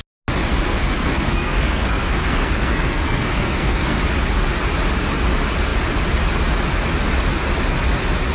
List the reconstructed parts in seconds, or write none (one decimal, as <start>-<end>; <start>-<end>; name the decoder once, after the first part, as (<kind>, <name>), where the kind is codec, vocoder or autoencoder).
0.5-4.0 (codec, SNAC)